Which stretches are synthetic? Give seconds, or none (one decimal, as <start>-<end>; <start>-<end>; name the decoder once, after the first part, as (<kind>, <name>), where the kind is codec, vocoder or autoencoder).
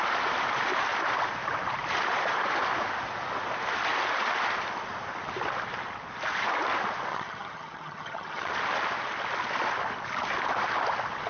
7.1-8.5 (vocoder, HiFi-GAN)